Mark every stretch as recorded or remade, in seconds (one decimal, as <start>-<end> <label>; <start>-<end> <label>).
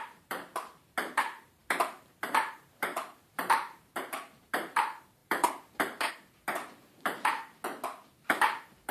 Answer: 0.0-7.6 remade; 7.6-8.4 recorded; 8.4-8.9 remade